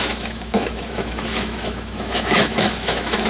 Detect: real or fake fake